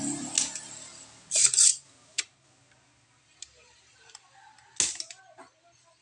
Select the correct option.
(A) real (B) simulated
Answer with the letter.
A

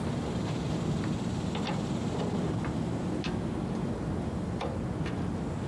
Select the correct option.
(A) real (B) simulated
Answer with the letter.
A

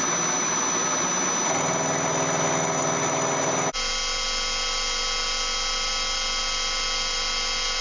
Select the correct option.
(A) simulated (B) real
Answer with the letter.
B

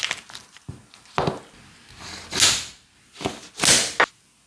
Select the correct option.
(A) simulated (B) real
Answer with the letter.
B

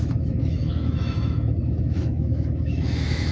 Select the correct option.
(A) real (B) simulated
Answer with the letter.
B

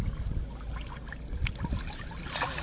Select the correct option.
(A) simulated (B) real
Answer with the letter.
B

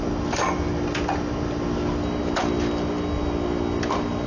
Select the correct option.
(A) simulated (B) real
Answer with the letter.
B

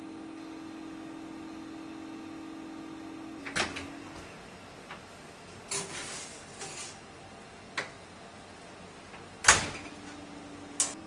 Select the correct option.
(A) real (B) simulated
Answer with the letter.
A